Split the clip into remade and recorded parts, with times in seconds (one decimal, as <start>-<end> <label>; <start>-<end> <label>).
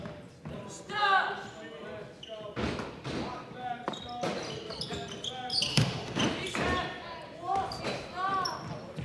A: 0.0-5.7 recorded; 5.7-6.2 remade; 6.2-9.0 recorded